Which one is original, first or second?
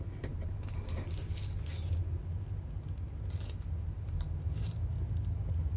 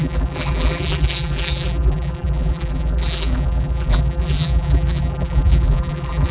first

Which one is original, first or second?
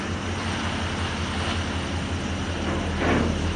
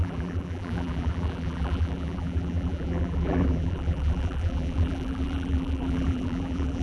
first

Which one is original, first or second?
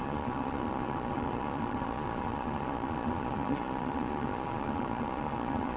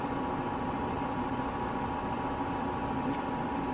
second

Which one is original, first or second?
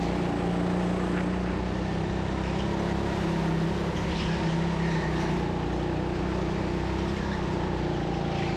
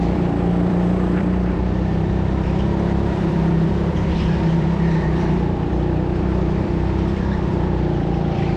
first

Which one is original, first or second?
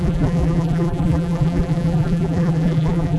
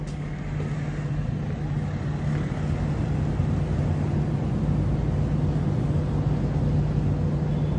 second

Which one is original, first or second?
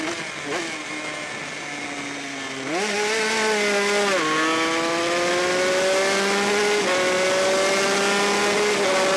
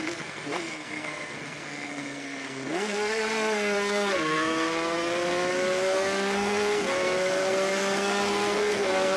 first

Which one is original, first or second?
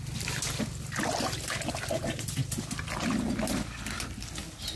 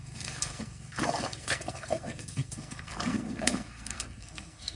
first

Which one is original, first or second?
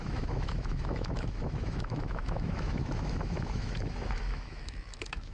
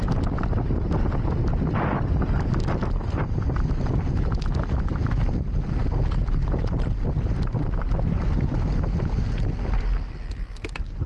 second